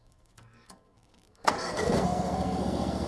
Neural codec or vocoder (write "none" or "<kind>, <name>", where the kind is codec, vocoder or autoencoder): codec, SNAC